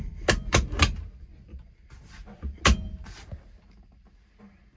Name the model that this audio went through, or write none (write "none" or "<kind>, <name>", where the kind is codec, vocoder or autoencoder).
none